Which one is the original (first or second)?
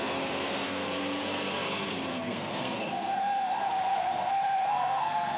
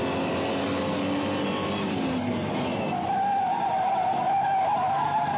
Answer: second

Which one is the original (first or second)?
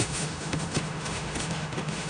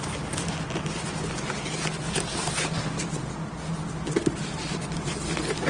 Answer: second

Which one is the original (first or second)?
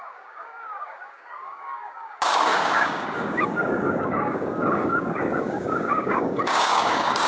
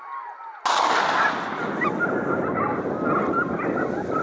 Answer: second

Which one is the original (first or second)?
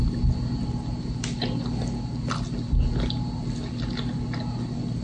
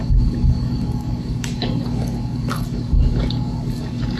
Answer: first